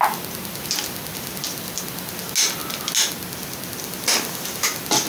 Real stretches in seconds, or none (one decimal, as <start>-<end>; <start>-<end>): 0.0-5.1